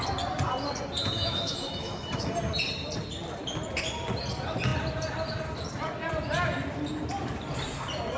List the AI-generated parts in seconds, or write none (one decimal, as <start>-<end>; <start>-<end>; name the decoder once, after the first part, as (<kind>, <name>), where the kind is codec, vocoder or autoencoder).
1.0-2.3 (autoencoder, DAC-VAE)